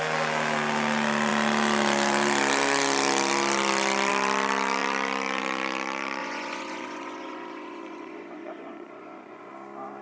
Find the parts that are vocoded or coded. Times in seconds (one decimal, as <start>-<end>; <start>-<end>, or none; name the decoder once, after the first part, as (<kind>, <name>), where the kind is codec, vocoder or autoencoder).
6.2-9.5 (vocoder, Vocos)